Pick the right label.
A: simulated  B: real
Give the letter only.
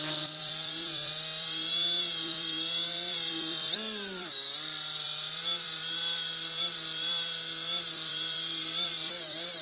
A